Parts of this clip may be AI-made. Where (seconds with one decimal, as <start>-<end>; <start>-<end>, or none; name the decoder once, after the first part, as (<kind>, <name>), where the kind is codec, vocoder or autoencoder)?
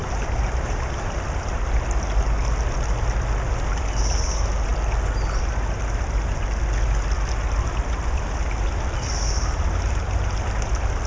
0.0-1.1 (vocoder, BigVGAN v2)